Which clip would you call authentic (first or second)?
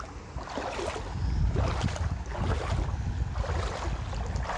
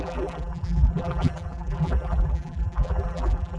first